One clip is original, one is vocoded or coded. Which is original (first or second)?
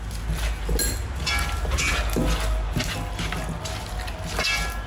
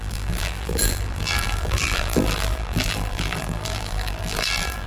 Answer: first